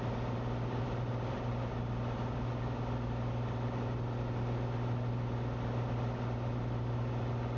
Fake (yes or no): no